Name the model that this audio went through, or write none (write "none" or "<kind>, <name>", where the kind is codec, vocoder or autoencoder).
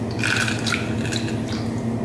none